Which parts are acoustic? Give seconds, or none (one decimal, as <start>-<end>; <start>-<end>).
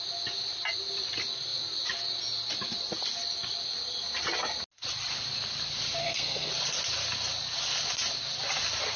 0.0-6.0; 6.5-9.0